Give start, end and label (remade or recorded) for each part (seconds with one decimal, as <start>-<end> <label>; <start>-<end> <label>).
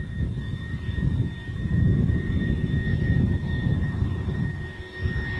0.0-4.7 remade; 4.7-5.4 recorded